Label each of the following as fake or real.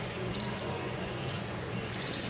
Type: fake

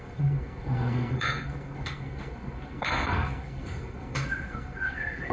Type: fake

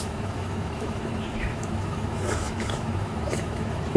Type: fake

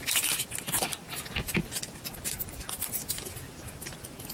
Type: real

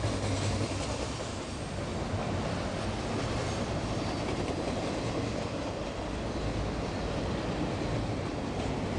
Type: real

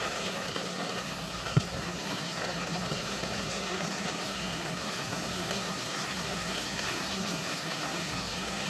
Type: fake